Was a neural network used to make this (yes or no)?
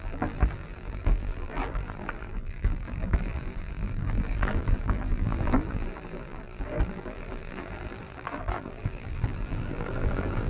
yes